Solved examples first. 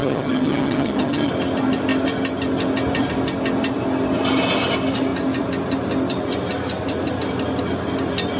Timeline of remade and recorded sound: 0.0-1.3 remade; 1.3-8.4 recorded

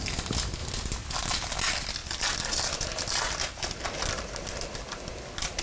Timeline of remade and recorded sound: 0.0-5.6 recorded

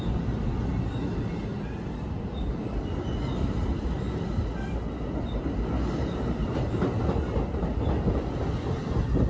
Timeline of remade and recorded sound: 0.0-9.3 recorded

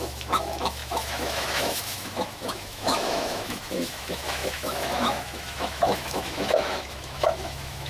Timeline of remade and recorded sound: 0.0-7.9 remade